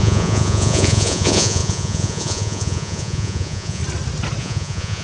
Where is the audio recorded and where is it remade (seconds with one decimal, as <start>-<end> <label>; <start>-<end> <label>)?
0.0-3.8 remade; 3.8-4.4 recorded; 4.4-5.0 remade